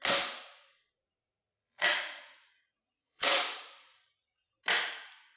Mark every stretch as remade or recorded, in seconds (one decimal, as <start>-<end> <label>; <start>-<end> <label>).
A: 0.0-1.3 recorded; 1.3-4.5 remade; 4.5-5.4 recorded